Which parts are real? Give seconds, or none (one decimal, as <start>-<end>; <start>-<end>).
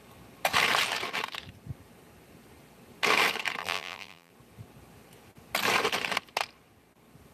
0.0-3.6; 4.3-7.3